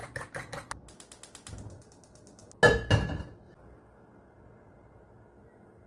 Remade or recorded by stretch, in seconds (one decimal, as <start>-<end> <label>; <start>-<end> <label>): 0.0-5.9 recorded